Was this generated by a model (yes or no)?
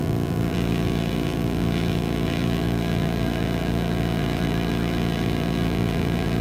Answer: yes